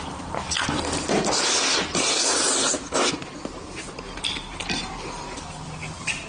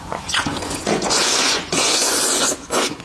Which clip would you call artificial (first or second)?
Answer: second